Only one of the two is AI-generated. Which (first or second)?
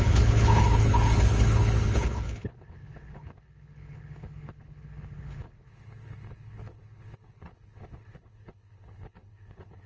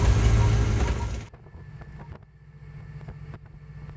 first